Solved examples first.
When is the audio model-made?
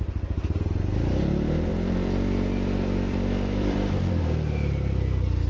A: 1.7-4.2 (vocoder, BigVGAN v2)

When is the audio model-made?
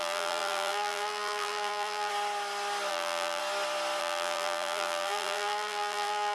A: 0.0-2.1 (vocoder, BigVGAN v2); 2.9-3.4; 4.0-6.3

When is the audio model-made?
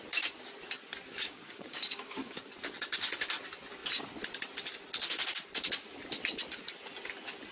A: 1.2-2.4 (codec, DAC)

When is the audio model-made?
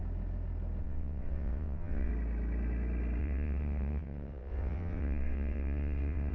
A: 0.8-2.1 (vocoder, WaveNeXt); 3.2-6.3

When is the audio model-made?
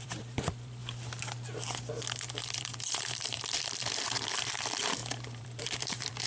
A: 0.0-0.8 (vocoder, BigVGAN v2); 2.2-6.3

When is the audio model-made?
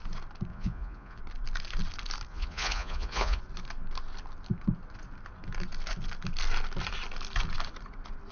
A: 0.5-1.2 (vocoder, Vocos); 2.3-3.4